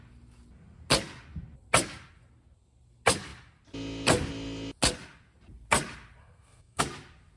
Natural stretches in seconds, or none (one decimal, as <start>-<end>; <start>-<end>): 0.0-6.2; 6.8-7.4